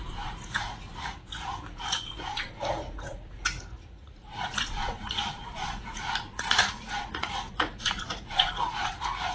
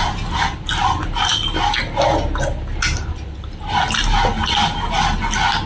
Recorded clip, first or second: second